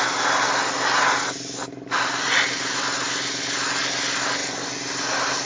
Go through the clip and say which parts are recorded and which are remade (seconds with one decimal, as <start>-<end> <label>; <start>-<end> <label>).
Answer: 0.0-5.5 recorded